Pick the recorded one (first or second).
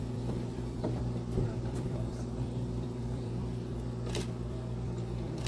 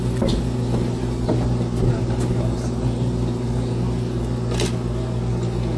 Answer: second